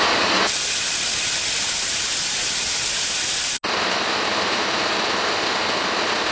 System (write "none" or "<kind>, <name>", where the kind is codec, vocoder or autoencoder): none